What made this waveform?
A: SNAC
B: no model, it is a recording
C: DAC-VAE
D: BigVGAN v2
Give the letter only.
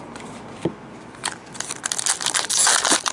B